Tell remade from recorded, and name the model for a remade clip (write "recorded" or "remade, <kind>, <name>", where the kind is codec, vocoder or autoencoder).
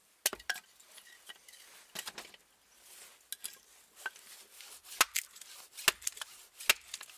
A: recorded